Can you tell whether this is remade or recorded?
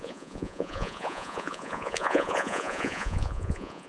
remade